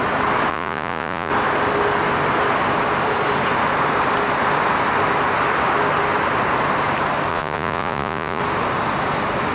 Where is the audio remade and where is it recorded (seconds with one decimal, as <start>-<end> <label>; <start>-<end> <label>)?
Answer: 0.0-0.5 recorded; 0.5-1.3 remade; 1.3-7.3 recorded; 7.3-8.4 remade; 8.4-9.5 recorded